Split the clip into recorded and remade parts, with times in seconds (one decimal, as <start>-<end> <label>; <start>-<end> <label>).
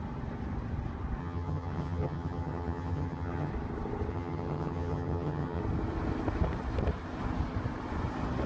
0.0-1.2 recorded; 1.2-3.5 remade; 3.5-4.1 recorded; 4.1-5.6 remade; 5.6-8.5 recorded